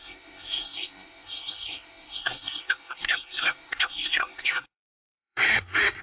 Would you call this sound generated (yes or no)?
yes